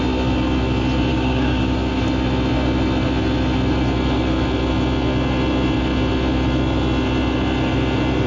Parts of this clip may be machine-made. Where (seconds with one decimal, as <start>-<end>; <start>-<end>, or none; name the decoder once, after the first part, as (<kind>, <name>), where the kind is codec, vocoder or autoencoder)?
1.1-2.0 (codec, DAC)